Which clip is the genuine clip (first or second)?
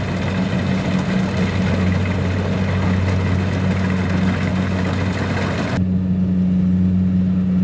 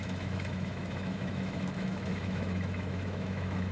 first